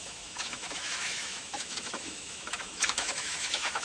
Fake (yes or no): yes